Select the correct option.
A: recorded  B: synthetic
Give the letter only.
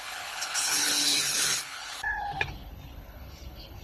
B